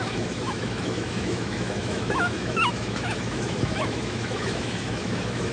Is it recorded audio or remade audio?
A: remade